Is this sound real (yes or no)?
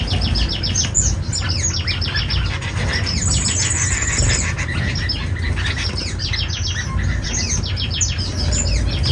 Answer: yes